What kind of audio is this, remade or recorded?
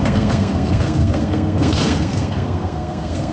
remade